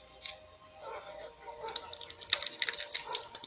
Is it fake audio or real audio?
real